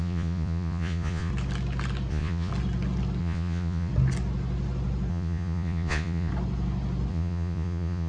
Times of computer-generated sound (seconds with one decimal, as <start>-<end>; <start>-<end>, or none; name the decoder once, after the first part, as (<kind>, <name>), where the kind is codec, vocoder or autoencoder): 0.0-1.3 (vocoder, Vocos); 2.1-2.5; 3.2-3.9; 5.1-6.3; 7.1-8.1

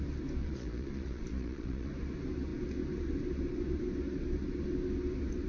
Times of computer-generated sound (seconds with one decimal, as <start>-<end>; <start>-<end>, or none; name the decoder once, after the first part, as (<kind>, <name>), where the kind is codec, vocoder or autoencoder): 0.4-1.9 (vocoder, Vocos)

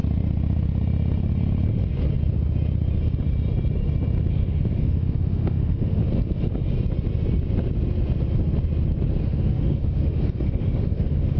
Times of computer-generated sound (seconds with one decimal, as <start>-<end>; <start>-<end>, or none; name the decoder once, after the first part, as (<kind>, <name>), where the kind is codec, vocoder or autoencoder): 4.3-6.0 (autoencoder, DAC-VAE); 9.2-11.4

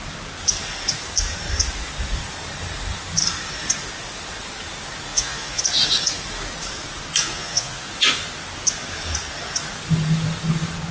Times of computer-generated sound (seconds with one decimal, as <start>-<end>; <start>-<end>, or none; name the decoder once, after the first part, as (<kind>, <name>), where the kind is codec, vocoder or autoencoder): 5.1-5.6 (vocoder, Vocos); 7.2-7.9

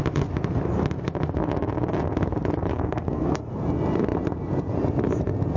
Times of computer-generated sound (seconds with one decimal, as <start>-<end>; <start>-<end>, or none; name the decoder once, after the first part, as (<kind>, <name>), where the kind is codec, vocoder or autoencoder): 2.7-3.5 (codec, SNAC)

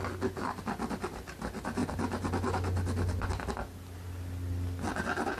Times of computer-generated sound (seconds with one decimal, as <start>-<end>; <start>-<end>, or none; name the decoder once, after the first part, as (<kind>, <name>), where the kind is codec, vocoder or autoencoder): none